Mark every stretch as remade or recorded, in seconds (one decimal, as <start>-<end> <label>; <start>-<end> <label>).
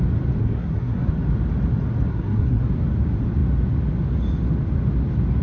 0.0-0.4 recorded; 0.4-1.1 remade; 1.1-2.1 recorded; 2.1-2.6 remade; 2.6-5.4 recorded